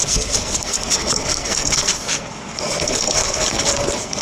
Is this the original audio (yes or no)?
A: no